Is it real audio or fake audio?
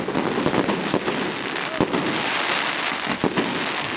real